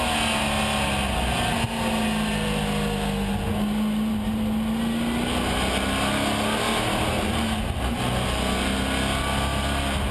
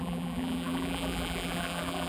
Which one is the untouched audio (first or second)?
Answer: first